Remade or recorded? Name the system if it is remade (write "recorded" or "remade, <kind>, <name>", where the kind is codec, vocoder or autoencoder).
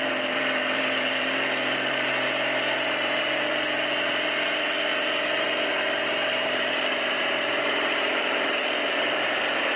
remade, vocoder, BigVGAN v2